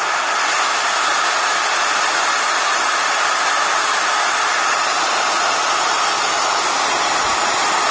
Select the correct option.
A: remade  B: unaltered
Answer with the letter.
B